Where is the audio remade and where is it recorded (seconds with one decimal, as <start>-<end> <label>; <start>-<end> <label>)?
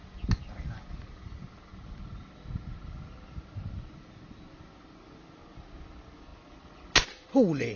0.0-7.8 recorded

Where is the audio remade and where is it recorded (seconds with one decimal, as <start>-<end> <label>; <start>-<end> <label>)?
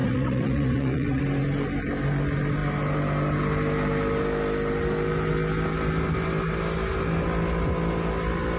0.0-1.2 remade; 1.2-8.6 recorded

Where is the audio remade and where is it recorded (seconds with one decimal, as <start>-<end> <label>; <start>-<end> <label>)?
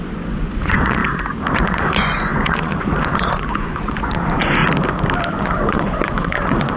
0.0-1.0 remade; 1.0-1.5 recorded; 1.5-4.6 remade; 4.6-5.3 recorded; 5.3-6.8 remade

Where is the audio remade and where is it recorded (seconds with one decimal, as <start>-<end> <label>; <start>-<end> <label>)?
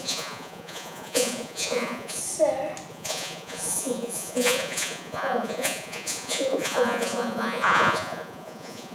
0.0-2.2 remade; 2.2-2.9 recorded; 2.9-8.9 remade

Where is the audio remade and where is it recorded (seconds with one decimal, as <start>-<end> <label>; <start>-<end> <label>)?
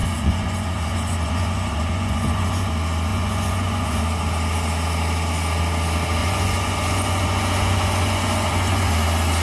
0.0-2.7 remade; 2.7-3.1 recorded; 3.1-4.0 remade; 4.0-6.2 recorded; 6.2-8.9 remade; 8.9-9.4 recorded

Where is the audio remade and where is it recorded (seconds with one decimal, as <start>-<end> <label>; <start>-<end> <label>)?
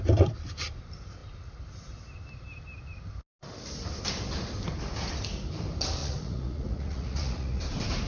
0.0-6.0 recorded; 6.0-7.6 remade; 7.6-8.1 recorded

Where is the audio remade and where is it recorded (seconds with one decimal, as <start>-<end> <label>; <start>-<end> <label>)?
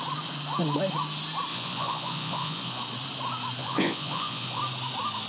0.0-1.5 recorded; 1.5-2.8 remade; 2.8-3.6 recorded; 3.6-4.6 remade; 4.6-5.3 recorded